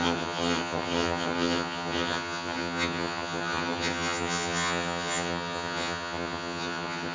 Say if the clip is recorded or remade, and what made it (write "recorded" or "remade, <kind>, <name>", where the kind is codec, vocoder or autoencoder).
remade, vocoder, HiFi-GAN